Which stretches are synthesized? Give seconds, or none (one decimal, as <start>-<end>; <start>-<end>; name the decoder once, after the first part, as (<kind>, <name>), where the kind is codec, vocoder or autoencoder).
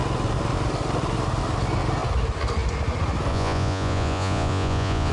3.3-5.1 (vocoder, Vocos)